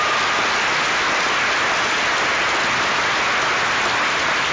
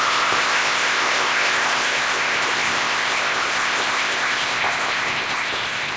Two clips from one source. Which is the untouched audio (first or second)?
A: first